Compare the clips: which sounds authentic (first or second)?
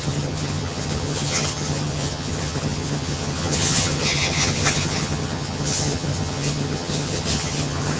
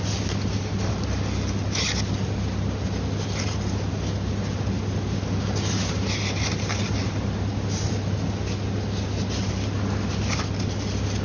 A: second